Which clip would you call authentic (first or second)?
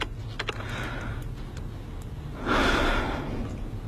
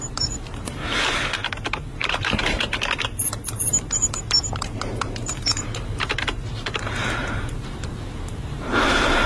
first